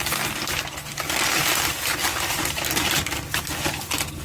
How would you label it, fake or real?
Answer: real